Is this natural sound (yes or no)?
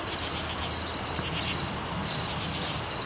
yes